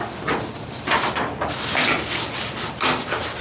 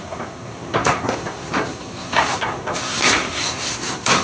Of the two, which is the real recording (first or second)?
first